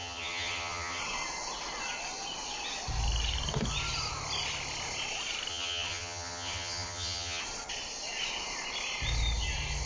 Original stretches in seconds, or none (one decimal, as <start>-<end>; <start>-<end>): 1.0-5.5; 7.4-9.9